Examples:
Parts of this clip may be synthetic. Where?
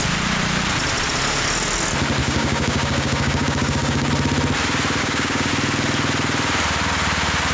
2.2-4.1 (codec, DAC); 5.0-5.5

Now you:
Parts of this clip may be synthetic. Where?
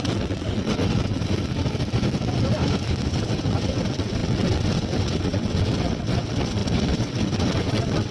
0.0-1.2 (vocoder, WaveNeXt); 3.1-8.1